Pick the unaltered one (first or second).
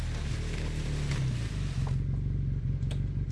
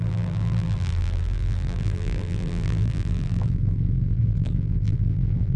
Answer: first